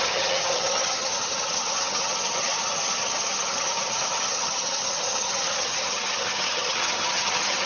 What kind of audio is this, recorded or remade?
remade